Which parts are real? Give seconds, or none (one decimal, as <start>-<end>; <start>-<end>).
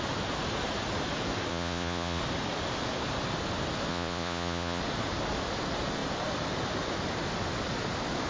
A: 0.0-1.5; 2.2-3.9; 4.8-8.3